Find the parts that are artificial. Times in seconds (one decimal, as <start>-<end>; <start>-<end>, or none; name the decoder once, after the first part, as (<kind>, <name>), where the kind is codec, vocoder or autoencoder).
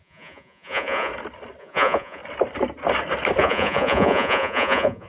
0.0-1.1 (vocoder, Vocos); 1.6-2.2; 3.4-5.1